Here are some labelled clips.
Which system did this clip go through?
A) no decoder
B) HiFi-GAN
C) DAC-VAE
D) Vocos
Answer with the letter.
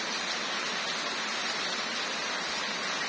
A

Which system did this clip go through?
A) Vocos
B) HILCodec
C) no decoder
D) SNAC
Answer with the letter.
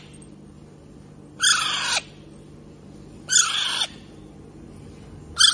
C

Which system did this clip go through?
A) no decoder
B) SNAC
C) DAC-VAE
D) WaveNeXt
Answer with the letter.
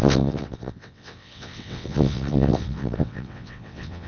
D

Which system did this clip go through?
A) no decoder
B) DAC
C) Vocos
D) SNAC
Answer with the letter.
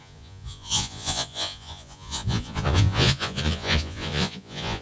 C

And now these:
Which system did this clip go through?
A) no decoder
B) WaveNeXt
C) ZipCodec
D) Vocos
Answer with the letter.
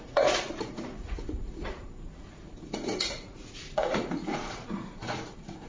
D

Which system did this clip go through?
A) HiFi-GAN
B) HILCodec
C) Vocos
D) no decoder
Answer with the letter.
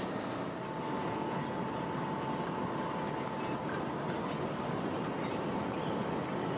D